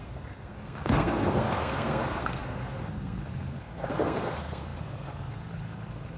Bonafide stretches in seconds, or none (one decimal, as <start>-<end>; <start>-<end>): none